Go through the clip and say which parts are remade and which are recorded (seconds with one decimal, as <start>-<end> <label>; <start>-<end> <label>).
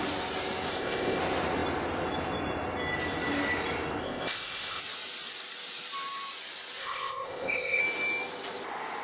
0.0-0.7 recorded; 0.7-1.2 remade; 1.2-4.0 recorded; 4.0-4.8 remade; 4.8-6.8 recorded; 6.8-7.8 remade; 7.8-9.0 recorded